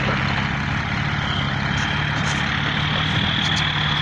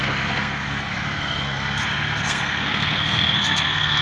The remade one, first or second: second